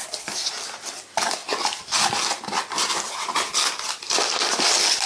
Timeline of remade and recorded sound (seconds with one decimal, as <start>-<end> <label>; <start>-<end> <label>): 0.0-0.5 remade; 0.5-5.1 recorded